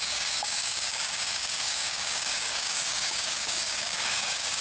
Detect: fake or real fake